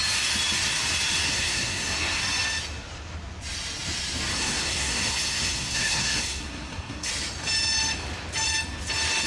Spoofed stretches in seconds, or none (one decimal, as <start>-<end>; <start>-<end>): 1.3-2.2; 4.3-7.1